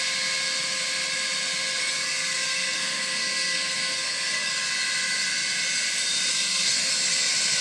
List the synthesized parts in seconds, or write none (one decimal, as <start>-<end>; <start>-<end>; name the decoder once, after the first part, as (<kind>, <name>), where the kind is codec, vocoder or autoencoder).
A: 1.8-4.5 (codec, SNAC); 6.3-6.9